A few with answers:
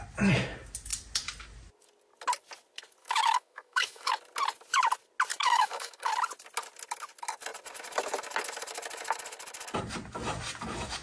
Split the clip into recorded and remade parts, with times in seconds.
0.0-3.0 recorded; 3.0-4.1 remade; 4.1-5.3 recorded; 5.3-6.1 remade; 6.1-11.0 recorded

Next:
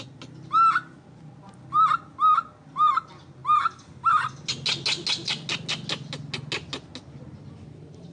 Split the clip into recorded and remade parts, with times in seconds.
0.0-8.1 recorded

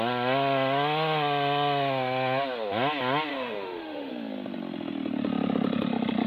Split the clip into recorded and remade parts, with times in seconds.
0.0-3.3 recorded; 3.3-4.1 remade; 4.1-6.3 recorded

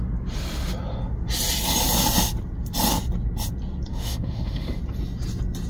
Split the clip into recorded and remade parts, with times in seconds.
0.0-3.9 recorded; 3.9-4.8 remade; 4.8-5.7 recorded